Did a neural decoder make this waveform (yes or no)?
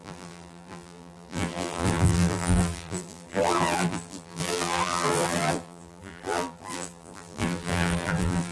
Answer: yes